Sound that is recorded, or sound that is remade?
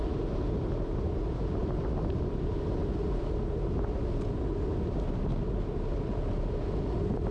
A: recorded